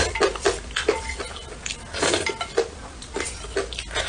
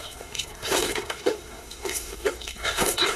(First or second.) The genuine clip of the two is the first